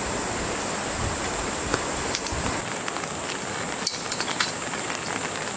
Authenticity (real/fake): real